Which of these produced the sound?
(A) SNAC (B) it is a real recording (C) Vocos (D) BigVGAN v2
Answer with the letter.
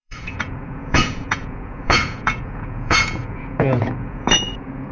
C